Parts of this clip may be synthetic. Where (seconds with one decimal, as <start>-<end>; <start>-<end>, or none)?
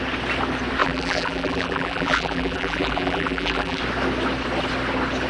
0.8-3.8